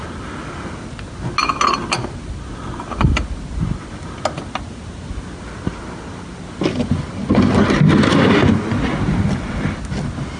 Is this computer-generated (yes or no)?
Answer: no